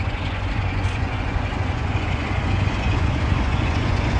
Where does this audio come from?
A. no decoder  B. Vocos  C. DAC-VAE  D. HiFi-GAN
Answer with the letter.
B